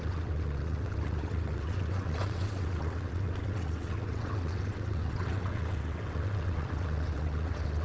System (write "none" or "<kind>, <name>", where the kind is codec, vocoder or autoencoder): vocoder, WaveNeXt